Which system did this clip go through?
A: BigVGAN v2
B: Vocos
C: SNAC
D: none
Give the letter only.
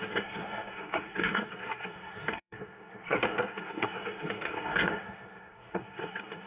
C